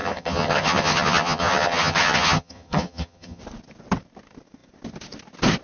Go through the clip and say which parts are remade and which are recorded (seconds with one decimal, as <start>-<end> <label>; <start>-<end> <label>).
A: 0.0-3.4 remade; 3.4-5.6 recorded